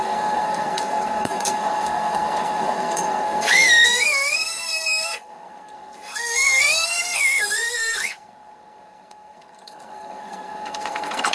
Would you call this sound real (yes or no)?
no